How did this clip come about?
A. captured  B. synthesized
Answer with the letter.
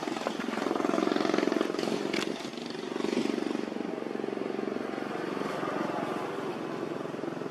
A